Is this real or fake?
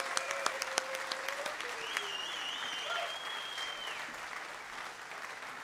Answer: real